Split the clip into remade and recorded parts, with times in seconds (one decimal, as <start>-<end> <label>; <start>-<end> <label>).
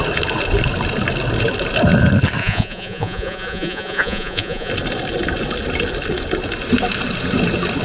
0.0-2.4 recorded; 2.4-4.7 remade; 4.7-7.8 recorded